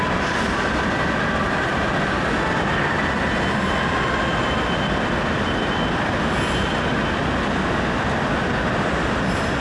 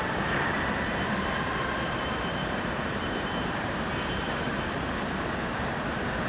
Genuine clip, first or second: first